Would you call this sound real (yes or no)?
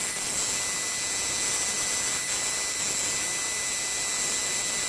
yes